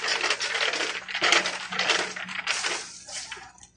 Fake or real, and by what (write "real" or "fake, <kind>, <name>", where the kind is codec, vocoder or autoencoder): real